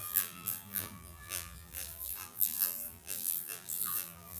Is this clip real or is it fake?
fake